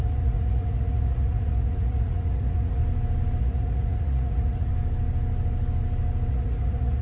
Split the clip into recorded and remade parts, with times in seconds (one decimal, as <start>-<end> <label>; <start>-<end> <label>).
0.0-2.8 remade; 2.8-3.4 recorded; 3.4-4.7 remade; 4.7-6.3 recorded; 6.3-7.0 remade